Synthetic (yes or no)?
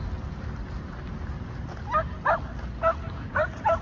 no